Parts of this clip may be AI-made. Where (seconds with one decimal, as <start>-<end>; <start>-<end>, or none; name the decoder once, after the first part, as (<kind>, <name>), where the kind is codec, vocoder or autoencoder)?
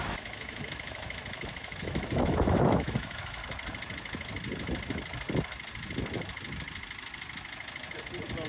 0.0-3.4 (autoencoder, DAC-VAE)